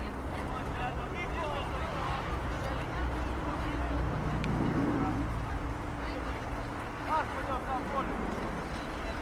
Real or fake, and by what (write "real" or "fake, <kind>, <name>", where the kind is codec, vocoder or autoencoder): real